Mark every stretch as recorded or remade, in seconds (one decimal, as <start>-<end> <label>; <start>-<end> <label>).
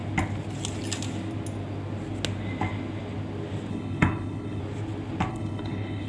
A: 0.0-3.7 recorded; 3.7-4.6 remade; 4.6-5.3 recorded; 5.3-6.1 remade